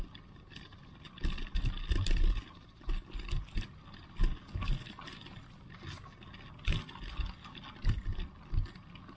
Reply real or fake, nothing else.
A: real